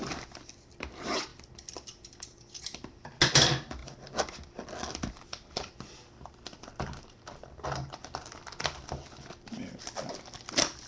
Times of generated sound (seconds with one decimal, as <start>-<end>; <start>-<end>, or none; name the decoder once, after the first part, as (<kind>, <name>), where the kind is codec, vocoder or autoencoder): none